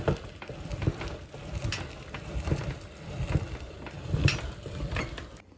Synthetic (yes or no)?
no